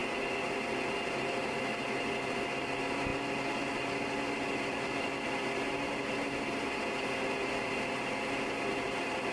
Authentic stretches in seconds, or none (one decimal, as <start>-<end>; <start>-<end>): 0.0-9.3